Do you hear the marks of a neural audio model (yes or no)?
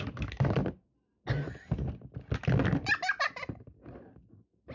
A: no